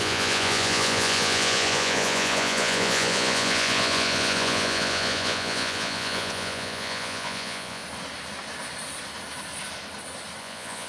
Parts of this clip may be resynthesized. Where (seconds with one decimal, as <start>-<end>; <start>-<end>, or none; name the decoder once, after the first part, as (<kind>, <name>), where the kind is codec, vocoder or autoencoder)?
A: 0.0-7.8 (vocoder, Vocos); 10.4-10.9